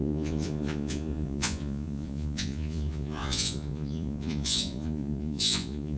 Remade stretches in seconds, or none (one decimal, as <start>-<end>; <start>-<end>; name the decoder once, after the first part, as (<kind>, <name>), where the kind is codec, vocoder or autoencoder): 0.0-6.0 (vocoder, Vocos)